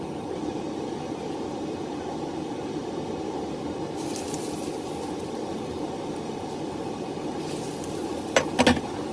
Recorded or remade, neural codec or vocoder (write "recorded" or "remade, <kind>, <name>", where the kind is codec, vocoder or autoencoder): recorded